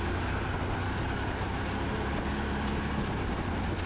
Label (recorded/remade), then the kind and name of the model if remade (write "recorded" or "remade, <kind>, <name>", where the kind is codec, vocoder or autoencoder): recorded